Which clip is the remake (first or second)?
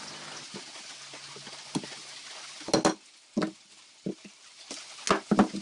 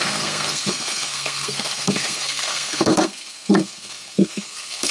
second